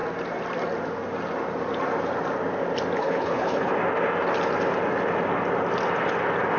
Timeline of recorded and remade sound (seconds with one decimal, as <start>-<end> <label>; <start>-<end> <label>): 0.0-3.0 recorded; 3.0-3.7 remade; 3.7-6.6 recorded